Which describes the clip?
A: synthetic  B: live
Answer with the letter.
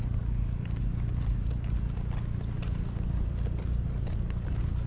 B